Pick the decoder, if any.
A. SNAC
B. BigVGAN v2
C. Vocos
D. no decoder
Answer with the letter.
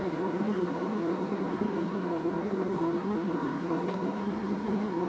A